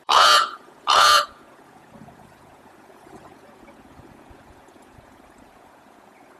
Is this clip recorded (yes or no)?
no